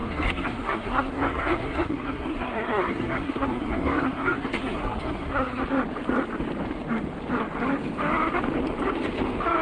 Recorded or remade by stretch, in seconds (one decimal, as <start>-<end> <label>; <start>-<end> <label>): 0.0-5.6 remade; 5.6-9.6 recorded